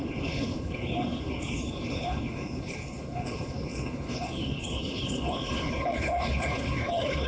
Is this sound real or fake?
fake